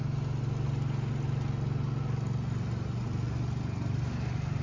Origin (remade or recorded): recorded